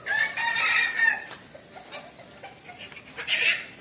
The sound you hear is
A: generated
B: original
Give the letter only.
B